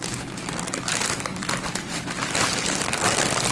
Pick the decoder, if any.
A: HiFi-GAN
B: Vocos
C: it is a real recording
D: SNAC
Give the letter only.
C